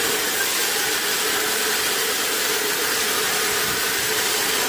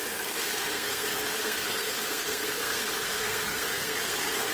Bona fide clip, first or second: first